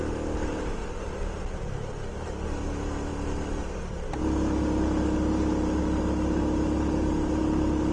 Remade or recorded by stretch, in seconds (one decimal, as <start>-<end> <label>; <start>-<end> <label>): 0.0-7.9 recorded